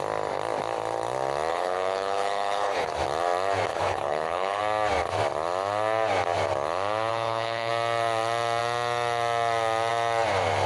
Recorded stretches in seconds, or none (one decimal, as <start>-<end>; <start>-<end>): 0.0-1.5; 2.9-3.7; 4.6-7.1; 7.7-10.7